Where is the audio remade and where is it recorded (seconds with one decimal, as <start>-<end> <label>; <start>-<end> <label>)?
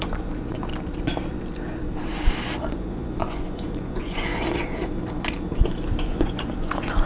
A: 0.0-0.7 remade; 0.7-2.7 recorded; 2.7-4.3 remade; 4.3-6.0 recorded; 6.0-7.1 remade